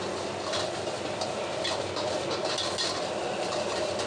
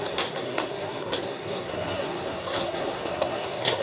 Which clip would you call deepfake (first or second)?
second